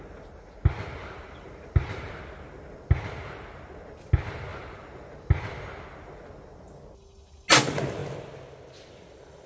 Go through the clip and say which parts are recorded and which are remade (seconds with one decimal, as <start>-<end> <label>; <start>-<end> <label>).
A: 0.0-1.0 recorded; 1.0-2.1 remade; 2.1-4.5 recorded; 4.5-5.6 remade; 5.6-9.5 recorded